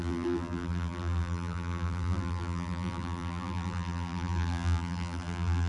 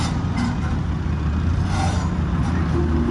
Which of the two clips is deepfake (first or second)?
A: first